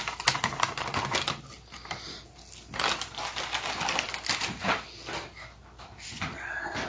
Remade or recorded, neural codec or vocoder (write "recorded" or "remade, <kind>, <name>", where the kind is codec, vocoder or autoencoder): recorded